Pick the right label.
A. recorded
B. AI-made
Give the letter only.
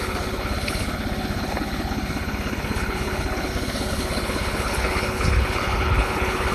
B